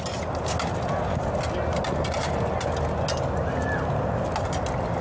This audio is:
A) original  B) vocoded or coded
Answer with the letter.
A